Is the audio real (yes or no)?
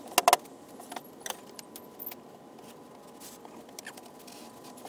yes